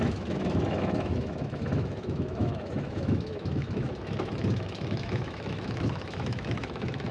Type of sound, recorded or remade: remade